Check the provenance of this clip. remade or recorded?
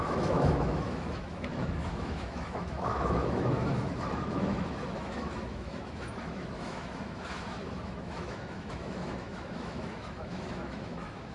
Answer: remade